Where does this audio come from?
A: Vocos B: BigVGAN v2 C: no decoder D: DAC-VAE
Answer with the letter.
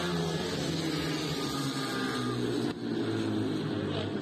C